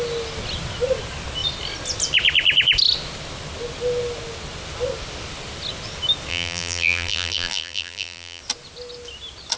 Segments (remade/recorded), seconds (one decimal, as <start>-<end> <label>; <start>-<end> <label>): 0.0-6.3 recorded; 6.3-8.4 remade; 8.4-9.6 recorded